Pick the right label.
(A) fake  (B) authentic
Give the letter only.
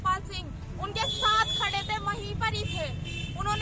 B